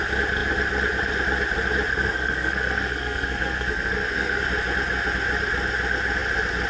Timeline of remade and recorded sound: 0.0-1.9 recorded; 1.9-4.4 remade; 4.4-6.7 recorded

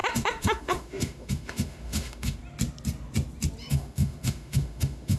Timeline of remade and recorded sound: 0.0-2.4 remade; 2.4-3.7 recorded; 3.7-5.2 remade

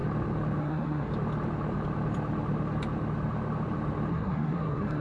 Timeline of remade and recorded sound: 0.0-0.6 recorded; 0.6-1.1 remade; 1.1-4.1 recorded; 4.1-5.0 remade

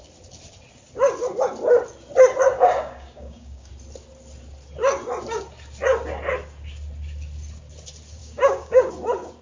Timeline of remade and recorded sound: 0.0-2.5 recorded; 2.5-3.7 remade; 3.7-8.2 recorded; 8.2-8.9 remade; 8.9-9.4 recorded